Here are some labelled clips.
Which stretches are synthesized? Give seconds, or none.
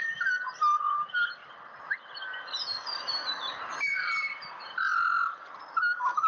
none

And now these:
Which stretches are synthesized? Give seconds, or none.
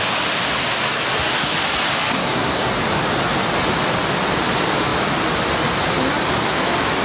2.1-2.7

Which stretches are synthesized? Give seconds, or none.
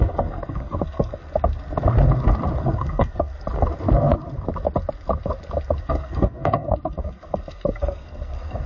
0.0-1.2; 2.6-3.3; 5.8-8.7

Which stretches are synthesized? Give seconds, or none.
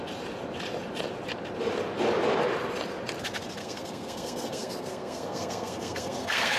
3.6-6.6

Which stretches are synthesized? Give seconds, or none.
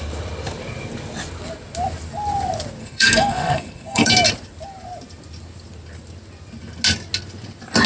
2.8-4.1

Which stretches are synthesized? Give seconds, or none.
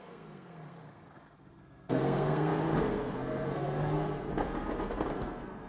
0.0-5.7